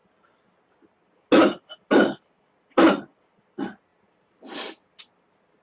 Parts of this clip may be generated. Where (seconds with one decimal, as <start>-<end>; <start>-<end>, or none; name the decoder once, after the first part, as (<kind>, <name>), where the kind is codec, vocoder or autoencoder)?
none